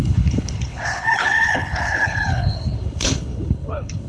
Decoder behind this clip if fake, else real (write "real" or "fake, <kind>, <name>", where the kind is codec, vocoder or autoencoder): fake, codec, HILCodec